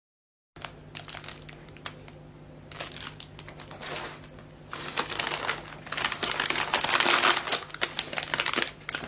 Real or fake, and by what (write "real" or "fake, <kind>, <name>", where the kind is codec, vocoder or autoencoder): real